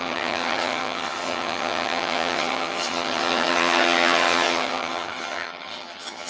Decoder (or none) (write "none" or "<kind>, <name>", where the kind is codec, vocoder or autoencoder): vocoder, HiFi-GAN